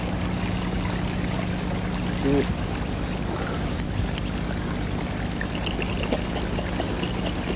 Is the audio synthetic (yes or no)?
no